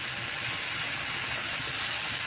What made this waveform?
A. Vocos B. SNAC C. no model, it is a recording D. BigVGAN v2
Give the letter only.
C